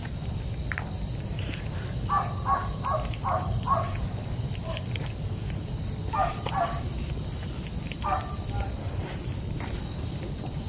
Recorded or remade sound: recorded